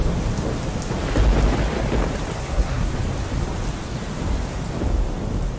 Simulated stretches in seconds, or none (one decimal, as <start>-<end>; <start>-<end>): 2.4-2.9